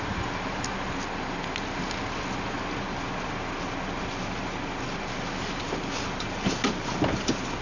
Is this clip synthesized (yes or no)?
no